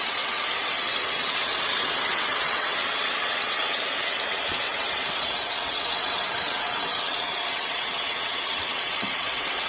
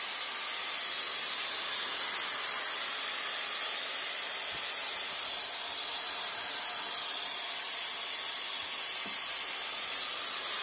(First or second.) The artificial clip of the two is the first